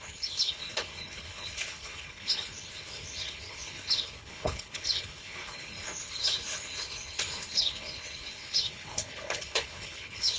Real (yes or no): no